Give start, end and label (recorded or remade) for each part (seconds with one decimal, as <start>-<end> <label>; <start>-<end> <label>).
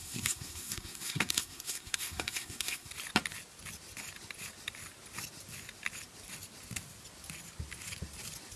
0.0-2.9 remade; 2.9-8.6 recorded